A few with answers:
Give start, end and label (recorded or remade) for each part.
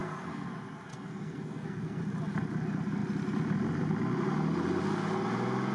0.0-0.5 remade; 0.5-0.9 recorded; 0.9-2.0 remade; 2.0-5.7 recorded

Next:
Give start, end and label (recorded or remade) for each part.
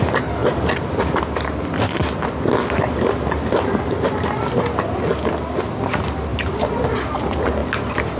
0.0-0.4 recorded; 0.4-3.8 remade; 3.8-5.1 recorded; 5.1-5.7 remade; 5.7-6.3 recorded; 6.3-6.8 remade; 6.8-8.2 recorded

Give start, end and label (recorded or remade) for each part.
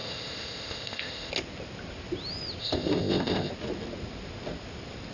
0.0-1.3 remade; 1.3-2.6 recorded; 2.6-3.5 remade; 3.5-5.1 recorded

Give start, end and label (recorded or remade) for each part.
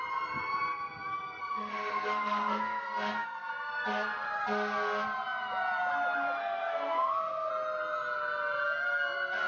0.0-1.4 recorded; 1.4-3.5 remade; 3.5-6.4 recorded; 6.4-7.5 remade; 7.5-9.5 recorded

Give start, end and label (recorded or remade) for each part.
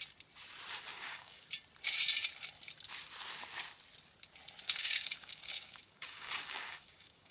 0.0-0.9 recorded; 0.9-1.5 remade; 1.5-4.6 recorded; 4.6-7.3 remade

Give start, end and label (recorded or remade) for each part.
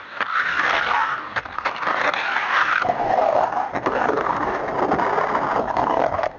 0.0-4.6 remade; 4.6-5.6 recorded; 5.6-6.4 remade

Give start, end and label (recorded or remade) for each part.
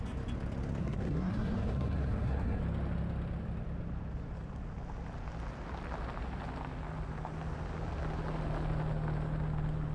0.0-0.8 recorded; 0.8-2.6 remade; 2.6-9.9 recorded